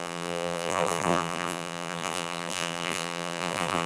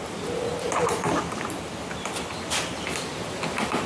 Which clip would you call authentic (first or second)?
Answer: second